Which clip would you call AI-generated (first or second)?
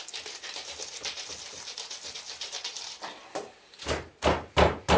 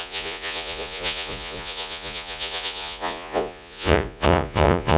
second